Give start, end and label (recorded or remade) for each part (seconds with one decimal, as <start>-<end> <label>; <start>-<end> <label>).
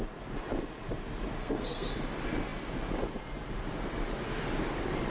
0.0-1.4 recorded; 1.4-1.9 remade; 1.9-5.1 recorded